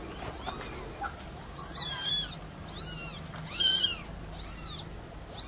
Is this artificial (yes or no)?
no